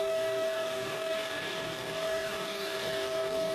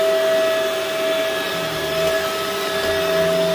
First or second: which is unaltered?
second